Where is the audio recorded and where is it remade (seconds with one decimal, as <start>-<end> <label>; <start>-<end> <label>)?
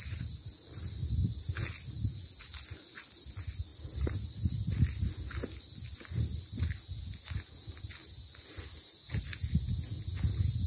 0.0-10.7 recorded